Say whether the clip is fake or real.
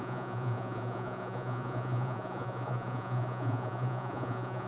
fake